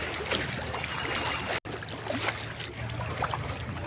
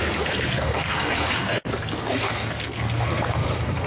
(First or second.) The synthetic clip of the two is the second